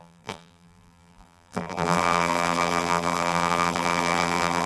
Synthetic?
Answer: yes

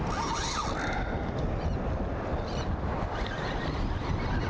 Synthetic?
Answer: no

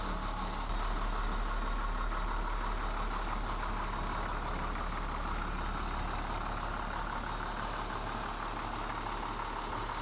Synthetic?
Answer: no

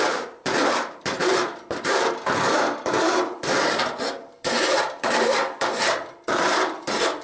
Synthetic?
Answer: yes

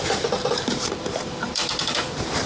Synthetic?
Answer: yes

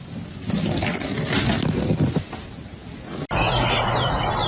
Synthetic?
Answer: no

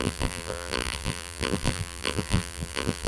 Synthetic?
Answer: yes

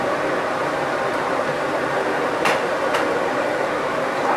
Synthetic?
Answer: yes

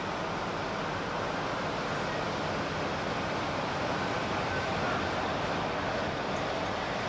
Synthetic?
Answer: yes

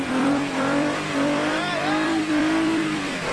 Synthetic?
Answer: yes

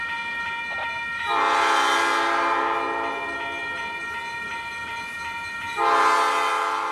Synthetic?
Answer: no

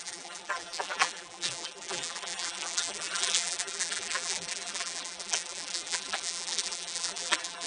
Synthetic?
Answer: yes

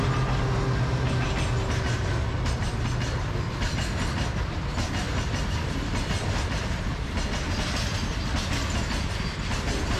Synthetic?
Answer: no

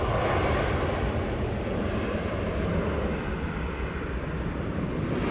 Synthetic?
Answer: no